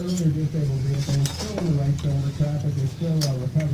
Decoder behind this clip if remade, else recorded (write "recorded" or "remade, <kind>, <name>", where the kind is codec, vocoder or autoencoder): recorded